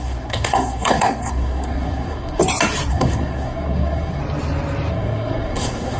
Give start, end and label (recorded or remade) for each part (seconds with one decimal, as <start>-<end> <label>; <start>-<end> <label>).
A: 0.0-2.4 remade; 2.4-2.9 recorded; 2.9-4.2 remade; 4.2-4.9 recorded; 4.9-6.0 remade